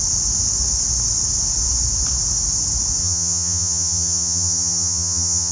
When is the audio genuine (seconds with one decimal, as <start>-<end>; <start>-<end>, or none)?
0.0-3.0